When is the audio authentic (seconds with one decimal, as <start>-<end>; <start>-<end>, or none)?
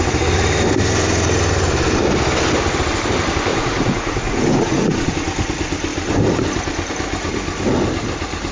0.0-3.5; 5.1-8.5